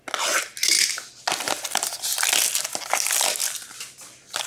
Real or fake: real